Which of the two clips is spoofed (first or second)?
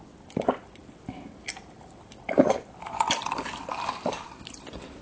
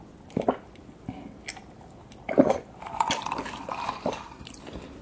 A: first